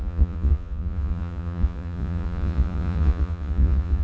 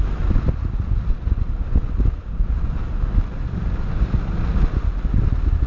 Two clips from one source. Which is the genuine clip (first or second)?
second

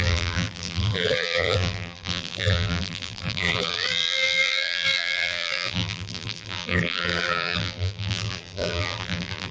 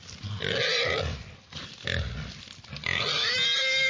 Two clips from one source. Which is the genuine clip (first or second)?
second